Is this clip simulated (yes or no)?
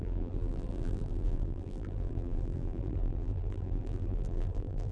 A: yes